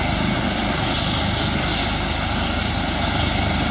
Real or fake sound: real